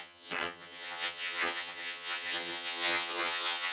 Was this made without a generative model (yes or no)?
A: no